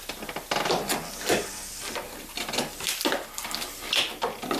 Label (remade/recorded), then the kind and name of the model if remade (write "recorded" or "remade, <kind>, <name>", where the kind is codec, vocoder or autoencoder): recorded